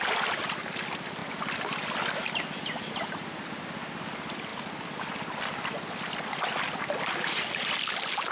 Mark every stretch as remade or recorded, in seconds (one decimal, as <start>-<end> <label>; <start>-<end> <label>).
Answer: 0.0-8.3 recorded